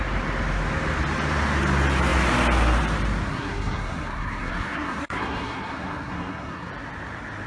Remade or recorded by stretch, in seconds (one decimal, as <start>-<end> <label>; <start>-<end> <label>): 0.0-3.3 recorded; 3.3-6.7 remade; 6.7-7.5 recorded